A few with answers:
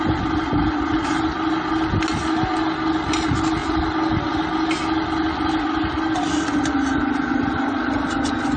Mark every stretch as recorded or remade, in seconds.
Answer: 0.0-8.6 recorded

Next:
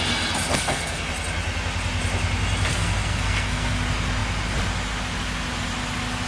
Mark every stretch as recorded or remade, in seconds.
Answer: 0.0-0.5 recorded; 0.5-1.1 remade; 1.1-2.7 recorded; 2.7-3.7 remade; 3.7-6.3 recorded

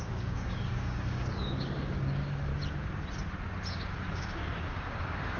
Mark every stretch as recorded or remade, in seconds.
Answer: 0.0-2.5 remade; 2.5-3.7 recorded; 3.7-5.4 remade